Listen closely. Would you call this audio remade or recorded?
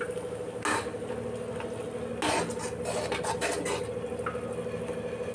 recorded